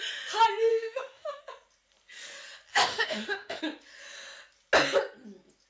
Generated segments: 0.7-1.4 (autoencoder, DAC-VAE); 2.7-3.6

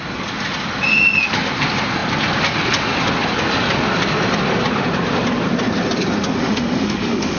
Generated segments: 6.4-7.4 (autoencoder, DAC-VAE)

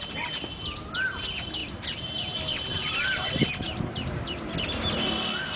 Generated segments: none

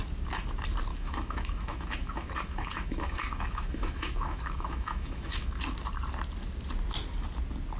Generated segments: 0.9-5.6 (autoencoder, DAC-VAE)